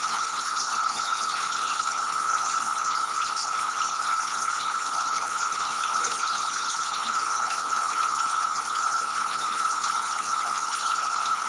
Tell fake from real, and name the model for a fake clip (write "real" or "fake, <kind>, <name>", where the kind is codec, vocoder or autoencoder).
fake, codec, HILCodec